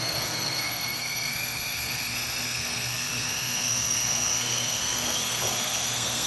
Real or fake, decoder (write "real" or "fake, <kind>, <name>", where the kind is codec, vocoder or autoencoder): fake, codec, SNAC